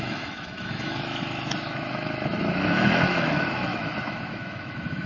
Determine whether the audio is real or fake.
fake